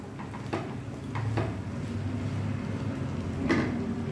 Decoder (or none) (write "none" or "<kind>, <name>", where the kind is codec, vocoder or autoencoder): none